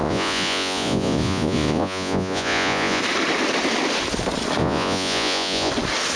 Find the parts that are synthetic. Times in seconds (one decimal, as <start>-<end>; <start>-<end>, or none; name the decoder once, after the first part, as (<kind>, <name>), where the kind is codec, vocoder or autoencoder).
0.0-3.0 (vocoder, Vocos); 4.6-5.7